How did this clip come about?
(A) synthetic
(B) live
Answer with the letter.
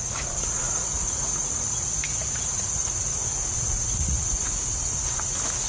A